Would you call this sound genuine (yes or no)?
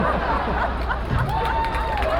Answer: yes